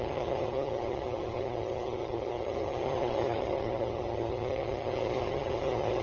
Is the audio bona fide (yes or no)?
no